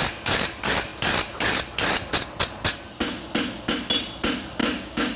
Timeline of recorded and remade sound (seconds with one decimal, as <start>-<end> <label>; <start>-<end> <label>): 0.0-4.6 recorded; 4.6-5.2 remade